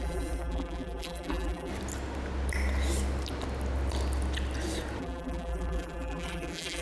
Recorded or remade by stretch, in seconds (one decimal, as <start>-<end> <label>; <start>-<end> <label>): 0.0-1.7 remade; 1.7-5.0 recorded; 5.0-6.8 remade